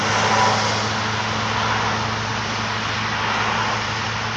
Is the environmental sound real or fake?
real